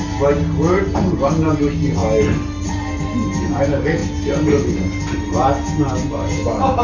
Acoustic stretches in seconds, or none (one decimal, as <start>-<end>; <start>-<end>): 0.0-6.8